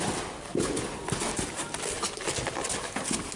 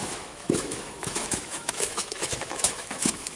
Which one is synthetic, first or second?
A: second